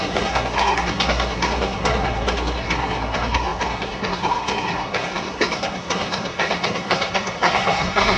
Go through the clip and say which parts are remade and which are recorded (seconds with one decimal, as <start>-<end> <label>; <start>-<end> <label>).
0.0-8.2 remade